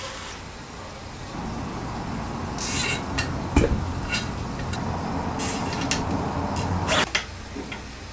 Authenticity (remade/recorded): recorded